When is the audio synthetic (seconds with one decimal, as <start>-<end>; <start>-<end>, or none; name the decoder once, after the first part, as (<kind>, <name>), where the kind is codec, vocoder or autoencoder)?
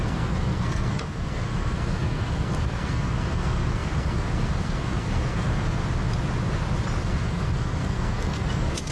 0.0-5.8 (codec, SNAC); 7.0-8.9